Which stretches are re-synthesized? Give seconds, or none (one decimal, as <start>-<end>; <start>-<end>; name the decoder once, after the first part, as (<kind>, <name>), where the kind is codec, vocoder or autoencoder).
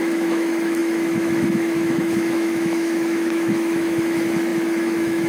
0.0-5.3 (autoencoder, DAC-VAE)